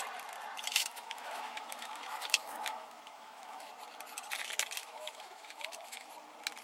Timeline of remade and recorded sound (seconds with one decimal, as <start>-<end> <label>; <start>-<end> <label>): 0.0-0.7 recorded; 0.7-3.7 remade; 3.7-4.8 recorded; 4.8-6.1 remade; 6.1-6.6 recorded